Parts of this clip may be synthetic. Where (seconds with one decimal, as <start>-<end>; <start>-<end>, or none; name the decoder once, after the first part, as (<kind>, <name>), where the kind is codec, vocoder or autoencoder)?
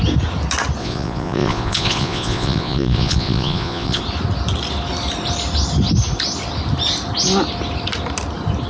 0.8-4.0 (vocoder, Vocos)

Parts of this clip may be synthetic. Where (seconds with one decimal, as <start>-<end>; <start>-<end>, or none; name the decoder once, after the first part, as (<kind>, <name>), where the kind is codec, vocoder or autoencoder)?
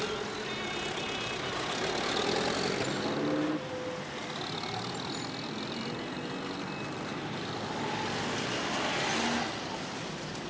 none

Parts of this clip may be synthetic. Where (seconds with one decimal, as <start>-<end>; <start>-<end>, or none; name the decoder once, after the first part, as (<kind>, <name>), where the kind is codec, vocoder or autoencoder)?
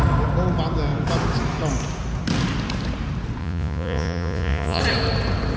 3.4-4.8 (vocoder, Vocos)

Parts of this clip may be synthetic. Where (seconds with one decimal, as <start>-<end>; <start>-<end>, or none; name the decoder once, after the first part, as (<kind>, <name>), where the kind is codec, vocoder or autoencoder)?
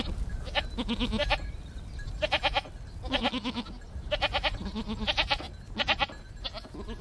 none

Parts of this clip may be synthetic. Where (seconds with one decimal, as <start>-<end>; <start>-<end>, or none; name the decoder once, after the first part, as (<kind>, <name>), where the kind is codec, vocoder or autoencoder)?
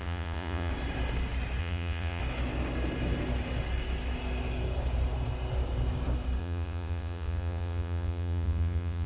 0.0-0.7 (vocoder, Vocos); 1.6-2.2; 6.4-9.1